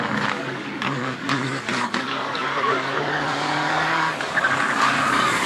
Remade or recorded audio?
remade